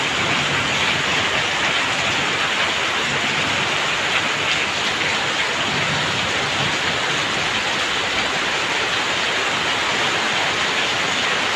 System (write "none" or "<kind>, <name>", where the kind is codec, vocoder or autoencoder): none